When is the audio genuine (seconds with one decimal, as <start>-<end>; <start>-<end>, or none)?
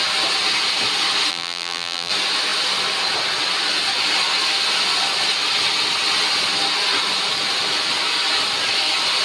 0.0-1.3; 2.1-9.2